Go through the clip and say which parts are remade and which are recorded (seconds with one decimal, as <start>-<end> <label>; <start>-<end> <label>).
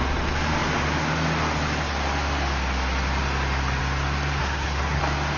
0.0-4.4 recorded; 4.4-5.0 remade; 5.0-5.4 recorded